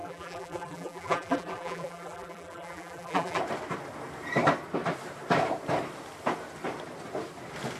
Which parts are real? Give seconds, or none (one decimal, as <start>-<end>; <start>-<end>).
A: 3.4-7.8